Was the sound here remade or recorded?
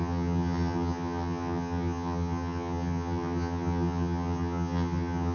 remade